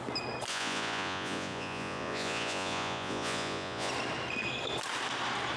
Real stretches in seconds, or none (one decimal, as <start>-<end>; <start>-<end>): 0.0-0.5; 3.9-5.6